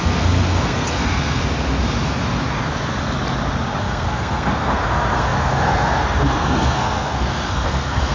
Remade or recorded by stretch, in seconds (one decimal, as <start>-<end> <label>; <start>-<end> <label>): 0.0-1.4 remade; 1.4-3.8 recorded; 3.8-8.1 remade